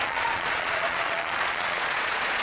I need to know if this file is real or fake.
fake